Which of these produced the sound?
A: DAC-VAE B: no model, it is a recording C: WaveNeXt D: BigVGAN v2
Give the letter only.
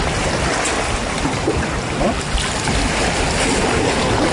B